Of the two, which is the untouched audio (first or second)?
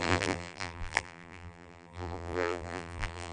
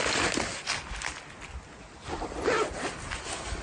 second